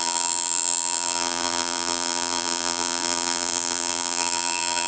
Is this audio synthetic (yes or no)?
yes